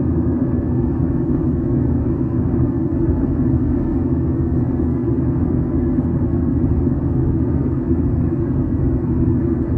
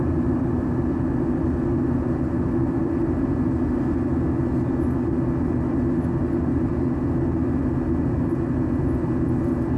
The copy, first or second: first